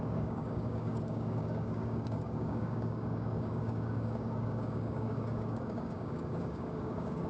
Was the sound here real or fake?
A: fake